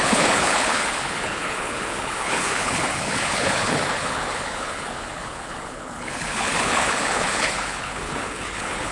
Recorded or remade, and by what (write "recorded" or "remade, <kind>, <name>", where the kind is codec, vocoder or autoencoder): remade, codec, HILCodec